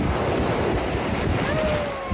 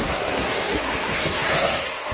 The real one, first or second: first